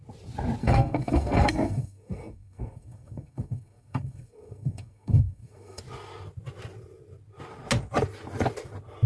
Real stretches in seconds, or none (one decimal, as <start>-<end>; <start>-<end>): 0.0-0.6; 5.8-9.1